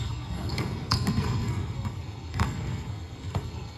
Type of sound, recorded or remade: remade